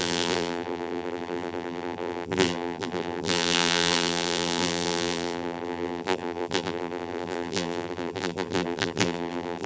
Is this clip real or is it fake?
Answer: fake